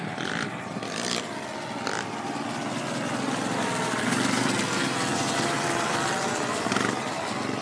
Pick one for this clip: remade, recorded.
remade